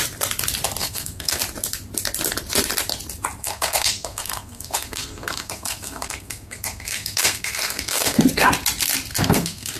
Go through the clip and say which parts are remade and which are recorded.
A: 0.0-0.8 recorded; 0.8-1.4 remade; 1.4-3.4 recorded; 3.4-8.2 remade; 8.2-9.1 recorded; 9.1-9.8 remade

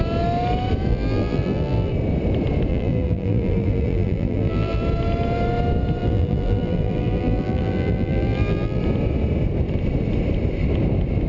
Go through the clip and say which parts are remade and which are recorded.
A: 0.0-0.9 recorded; 0.9-1.9 remade; 1.9-2.7 recorded; 2.7-4.8 remade; 4.8-6.0 recorded; 6.0-8.8 remade; 8.8-11.3 recorded

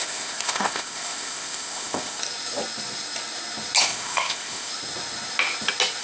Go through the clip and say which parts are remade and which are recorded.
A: 0.0-2.2 remade; 2.2-3.8 recorded; 3.8-4.7 remade; 4.7-6.0 recorded

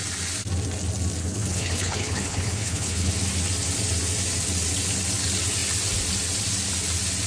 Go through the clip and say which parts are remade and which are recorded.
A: 0.0-1.2 recorded; 1.2-3.1 remade; 3.1-7.3 recorded